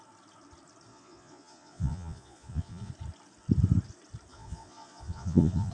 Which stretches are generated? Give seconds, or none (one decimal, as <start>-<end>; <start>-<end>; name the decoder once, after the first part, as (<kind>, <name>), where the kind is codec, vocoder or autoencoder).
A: 0.9-2.9 (vocoder, Vocos); 4.3-5.7